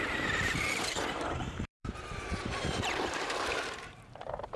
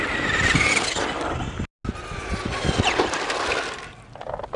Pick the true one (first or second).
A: second